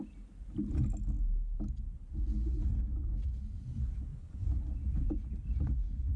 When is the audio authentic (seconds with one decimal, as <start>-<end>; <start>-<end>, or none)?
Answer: 0.0-4.1; 4.6-6.2